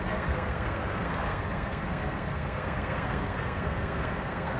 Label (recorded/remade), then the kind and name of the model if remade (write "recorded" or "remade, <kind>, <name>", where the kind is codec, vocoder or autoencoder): remade, codec, SNAC